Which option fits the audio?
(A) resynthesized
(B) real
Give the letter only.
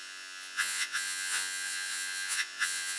A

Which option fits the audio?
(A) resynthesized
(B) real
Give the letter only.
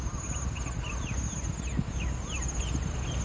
B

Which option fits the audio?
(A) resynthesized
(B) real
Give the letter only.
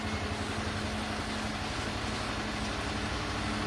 B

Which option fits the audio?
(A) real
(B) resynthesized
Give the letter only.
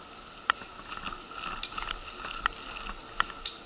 A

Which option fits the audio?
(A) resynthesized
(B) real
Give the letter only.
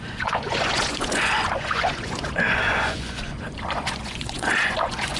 A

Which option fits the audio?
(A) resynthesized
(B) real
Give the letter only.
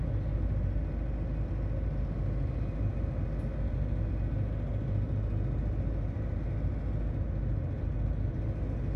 B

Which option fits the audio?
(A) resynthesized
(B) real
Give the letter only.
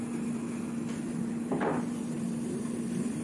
B